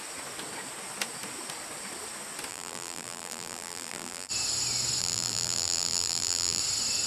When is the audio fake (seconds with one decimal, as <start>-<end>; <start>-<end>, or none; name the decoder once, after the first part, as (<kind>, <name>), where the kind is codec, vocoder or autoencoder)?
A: 2.5-4.3 (vocoder, BigVGAN v2); 5.0-6.6